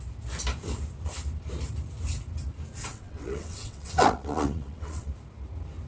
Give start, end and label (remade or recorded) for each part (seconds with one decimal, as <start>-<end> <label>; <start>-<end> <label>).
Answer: 0.0-2.9 recorded; 2.9-5.1 remade; 5.1-5.9 recorded